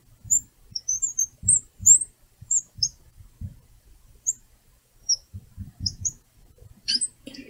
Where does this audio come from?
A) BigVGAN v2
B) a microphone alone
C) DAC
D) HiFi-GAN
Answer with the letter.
A